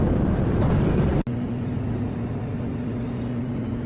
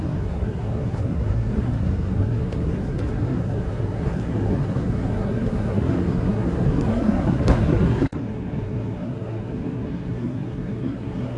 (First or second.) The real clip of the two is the first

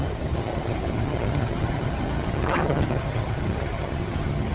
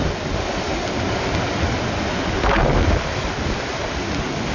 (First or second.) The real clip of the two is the second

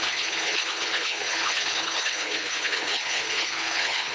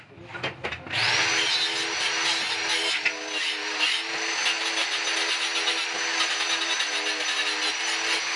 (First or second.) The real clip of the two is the second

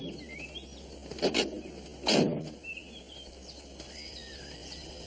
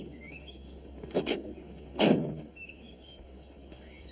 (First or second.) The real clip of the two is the first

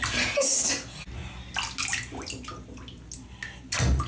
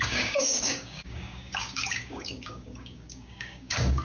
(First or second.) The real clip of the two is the first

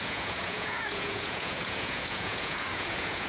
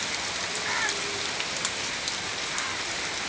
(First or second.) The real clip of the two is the second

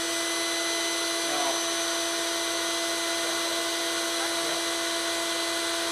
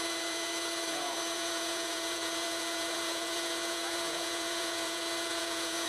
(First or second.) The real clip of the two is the first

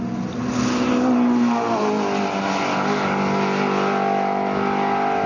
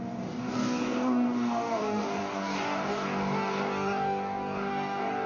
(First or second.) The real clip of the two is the first